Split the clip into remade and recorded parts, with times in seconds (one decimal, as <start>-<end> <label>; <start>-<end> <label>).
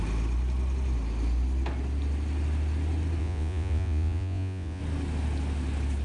0.0-3.2 recorded; 3.2-4.8 remade; 4.8-6.0 recorded